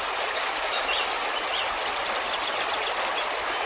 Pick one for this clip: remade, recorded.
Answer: recorded